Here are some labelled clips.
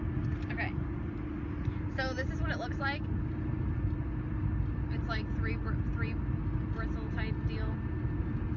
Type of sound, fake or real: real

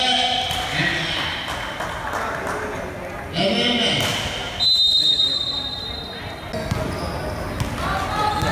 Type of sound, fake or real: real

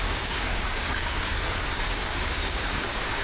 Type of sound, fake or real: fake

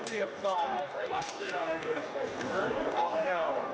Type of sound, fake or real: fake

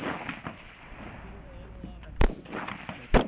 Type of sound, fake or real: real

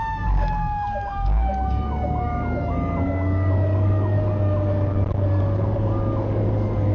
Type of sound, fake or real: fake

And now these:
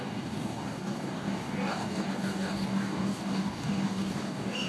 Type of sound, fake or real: fake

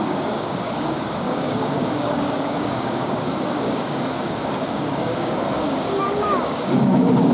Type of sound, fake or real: fake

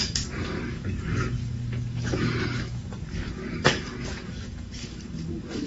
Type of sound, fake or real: fake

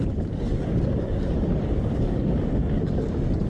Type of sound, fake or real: fake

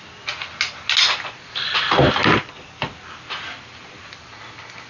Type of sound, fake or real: real